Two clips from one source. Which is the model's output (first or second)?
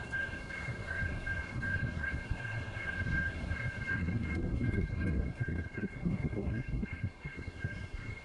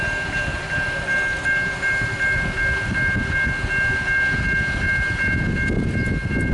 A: first